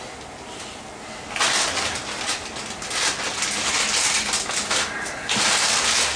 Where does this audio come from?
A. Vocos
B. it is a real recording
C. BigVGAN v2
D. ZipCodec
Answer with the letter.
B